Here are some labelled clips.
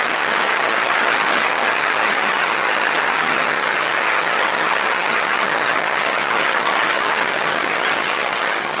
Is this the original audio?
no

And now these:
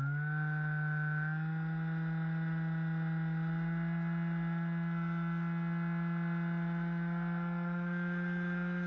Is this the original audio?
yes